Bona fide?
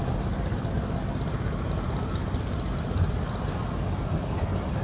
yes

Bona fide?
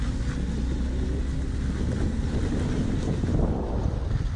yes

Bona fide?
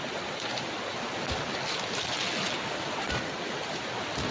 yes